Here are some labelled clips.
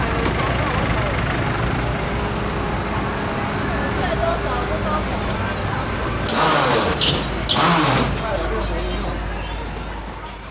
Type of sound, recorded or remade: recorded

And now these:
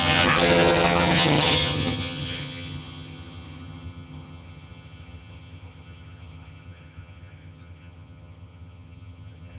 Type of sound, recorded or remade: remade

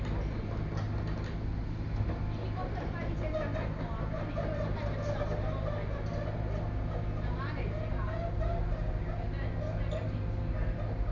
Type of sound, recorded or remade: recorded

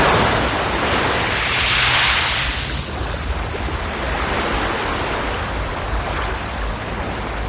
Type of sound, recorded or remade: recorded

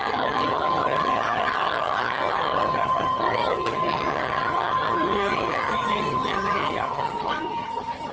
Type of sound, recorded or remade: remade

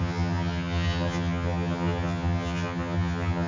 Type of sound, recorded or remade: remade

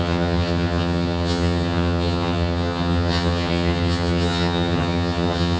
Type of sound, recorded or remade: remade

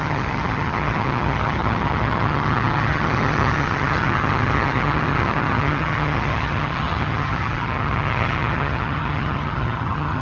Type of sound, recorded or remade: remade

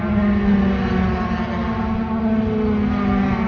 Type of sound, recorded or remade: recorded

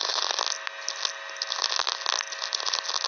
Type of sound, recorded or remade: recorded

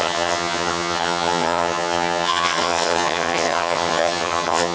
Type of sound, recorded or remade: remade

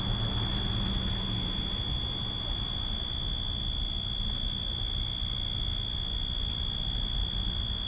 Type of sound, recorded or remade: recorded